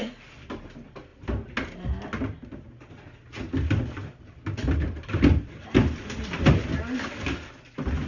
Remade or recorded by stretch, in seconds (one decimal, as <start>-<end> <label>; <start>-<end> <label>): 0.0-8.1 recorded